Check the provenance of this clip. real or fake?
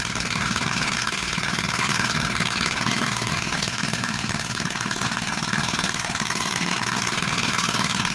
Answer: fake